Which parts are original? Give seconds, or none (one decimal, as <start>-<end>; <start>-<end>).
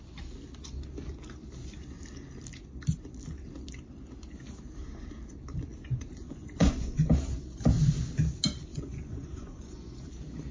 0.0-6.2; 7.1-8.7; 10.1-10.5